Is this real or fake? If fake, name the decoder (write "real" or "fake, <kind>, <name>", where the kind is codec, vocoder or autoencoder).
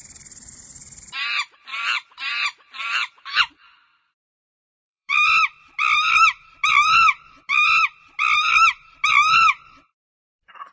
fake, vocoder, BigVGAN v2